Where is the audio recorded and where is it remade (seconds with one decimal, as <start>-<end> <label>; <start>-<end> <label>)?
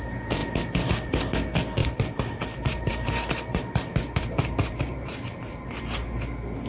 0.0-1.8 recorded; 1.8-5.8 remade; 5.8-6.7 recorded